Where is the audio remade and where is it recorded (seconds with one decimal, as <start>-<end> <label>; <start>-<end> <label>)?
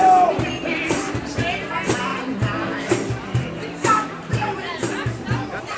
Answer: 0.0-2.1 remade; 2.1-3.1 recorded; 3.1-5.8 remade